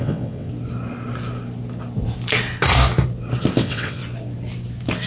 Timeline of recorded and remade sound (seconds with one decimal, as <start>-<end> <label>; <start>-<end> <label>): 0.0-0.5 remade; 0.5-3.6 recorded; 3.6-4.0 remade; 4.0-5.1 recorded